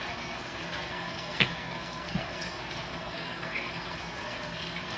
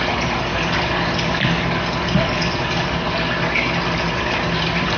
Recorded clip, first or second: second